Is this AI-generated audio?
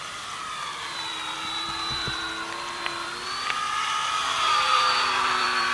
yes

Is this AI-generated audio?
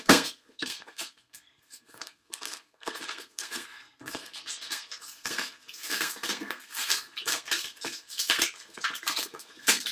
yes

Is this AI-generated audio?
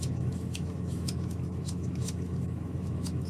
yes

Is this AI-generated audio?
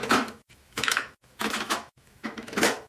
yes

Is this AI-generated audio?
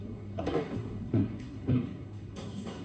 yes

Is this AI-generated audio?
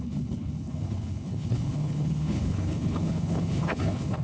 yes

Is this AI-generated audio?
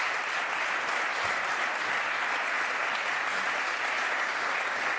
no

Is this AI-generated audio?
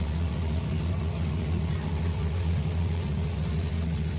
yes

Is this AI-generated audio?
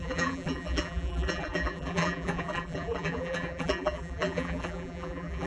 yes